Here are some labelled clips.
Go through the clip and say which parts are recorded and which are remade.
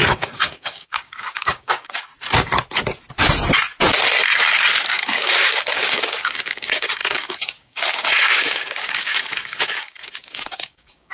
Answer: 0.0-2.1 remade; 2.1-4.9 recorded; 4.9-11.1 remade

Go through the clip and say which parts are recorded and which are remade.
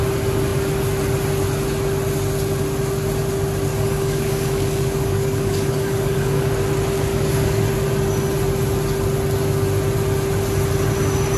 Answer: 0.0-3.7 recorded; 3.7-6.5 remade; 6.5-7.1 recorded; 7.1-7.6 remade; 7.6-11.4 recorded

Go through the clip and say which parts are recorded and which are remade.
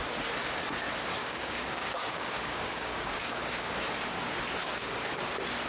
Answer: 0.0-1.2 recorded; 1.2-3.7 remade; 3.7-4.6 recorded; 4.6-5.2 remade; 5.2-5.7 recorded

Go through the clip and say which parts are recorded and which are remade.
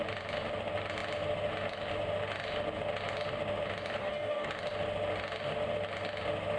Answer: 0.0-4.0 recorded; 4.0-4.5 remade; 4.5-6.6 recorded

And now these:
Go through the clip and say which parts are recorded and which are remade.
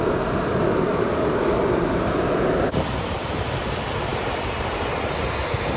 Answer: 0.0-0.9 recorded; 0.9-1.6 remade; 1.6-5.8 recorded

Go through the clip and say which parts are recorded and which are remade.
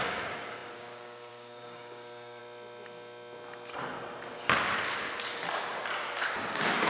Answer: 0.0-2.4 remade; 2.4-6.5 recorded; 6.5-6.9 remade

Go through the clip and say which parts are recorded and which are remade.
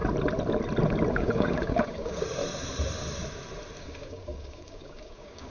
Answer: 0.0-1.1 recorded; 1.1-2.4 remade; 2.4-3.8 recorded; 3.8-5.5 remade